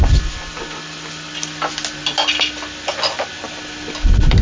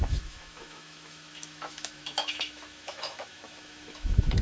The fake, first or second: second